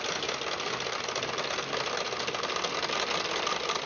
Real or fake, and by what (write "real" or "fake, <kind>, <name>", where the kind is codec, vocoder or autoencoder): real